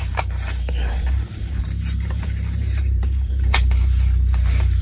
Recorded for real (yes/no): no